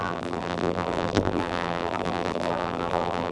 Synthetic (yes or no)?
yes